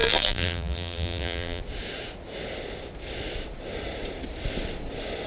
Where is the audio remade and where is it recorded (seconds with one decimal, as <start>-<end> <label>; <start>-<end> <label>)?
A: 0.0-1.6 remade; 1.6-5.3 recorded